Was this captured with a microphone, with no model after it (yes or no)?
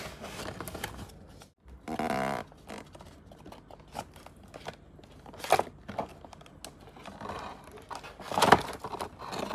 yes